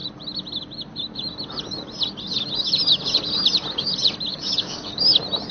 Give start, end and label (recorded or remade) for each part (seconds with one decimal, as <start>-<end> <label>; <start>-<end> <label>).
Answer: 0.0-4.3 recorded; 4.3-5.0 remade; 5.0-5.5 recorded